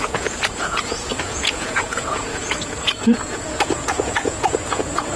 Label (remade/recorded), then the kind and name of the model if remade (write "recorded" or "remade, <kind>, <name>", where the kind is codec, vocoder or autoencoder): remade, vocoder, Vocos